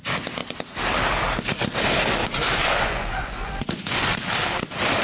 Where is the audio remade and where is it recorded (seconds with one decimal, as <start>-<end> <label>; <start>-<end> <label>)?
0.0-2.2 recorded; 2.2-4.1 remade; 4.1-5.0 recorded